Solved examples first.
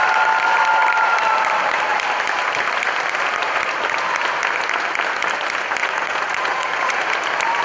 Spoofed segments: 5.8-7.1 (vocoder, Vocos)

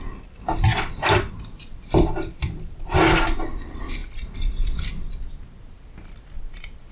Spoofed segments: none

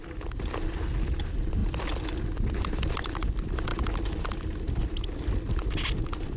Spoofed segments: none

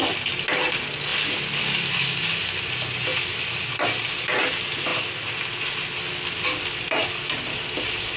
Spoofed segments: none